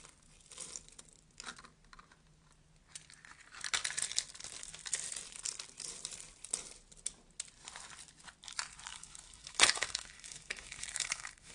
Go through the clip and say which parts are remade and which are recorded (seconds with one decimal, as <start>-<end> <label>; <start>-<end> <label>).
0.0-8.9 recorded; 8.9-11.5 remade